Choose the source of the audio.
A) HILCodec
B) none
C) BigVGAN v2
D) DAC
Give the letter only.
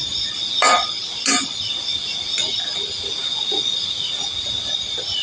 B